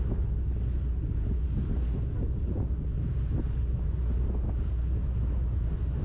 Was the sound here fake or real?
real